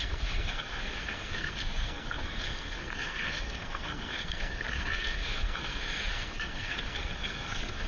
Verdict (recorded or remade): remade